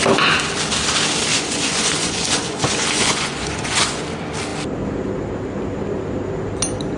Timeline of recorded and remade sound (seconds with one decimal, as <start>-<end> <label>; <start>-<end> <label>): 0.0-1.3 recorded; 1.3-4.0 remade; 4.0-7.0 recorded